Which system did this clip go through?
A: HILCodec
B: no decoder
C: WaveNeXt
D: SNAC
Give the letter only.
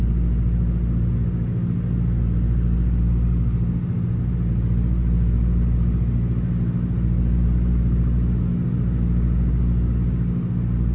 B